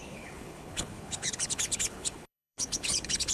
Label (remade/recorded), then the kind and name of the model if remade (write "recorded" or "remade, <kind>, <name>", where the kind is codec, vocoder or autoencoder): remade, codec, HILCodec